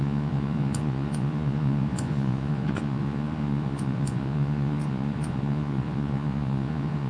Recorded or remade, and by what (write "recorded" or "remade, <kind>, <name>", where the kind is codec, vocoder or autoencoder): remade, vocoder, Vocos